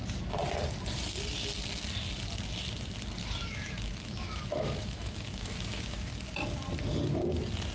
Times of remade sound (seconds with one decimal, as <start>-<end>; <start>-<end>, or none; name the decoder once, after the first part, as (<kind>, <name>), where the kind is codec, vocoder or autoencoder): 3.2-6.1 (autoencoder, DAC-VAE)